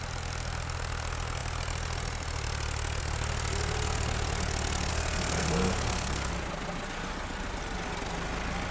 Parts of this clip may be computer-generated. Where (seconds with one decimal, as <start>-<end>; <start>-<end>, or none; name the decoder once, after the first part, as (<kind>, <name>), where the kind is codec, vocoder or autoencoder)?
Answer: 4.9-6.3 (codec, SNAC)